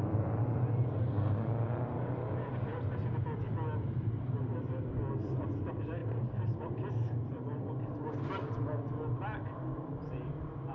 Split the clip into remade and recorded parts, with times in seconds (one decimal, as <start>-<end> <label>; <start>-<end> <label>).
0.0-10.7 recorded